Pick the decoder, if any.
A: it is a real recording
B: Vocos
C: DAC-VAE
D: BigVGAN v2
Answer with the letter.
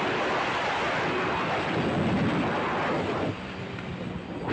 A